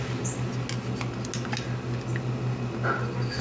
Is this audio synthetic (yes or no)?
no